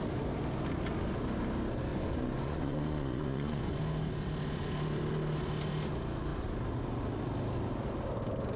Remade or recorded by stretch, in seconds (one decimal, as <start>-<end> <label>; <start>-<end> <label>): 0.0-1.9 recorded; 1.9-3.8 remade; 3.8-8.6 recorded

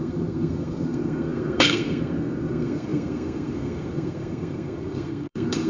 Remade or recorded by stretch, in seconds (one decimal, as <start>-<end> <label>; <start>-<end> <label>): 0.0-5.7 remade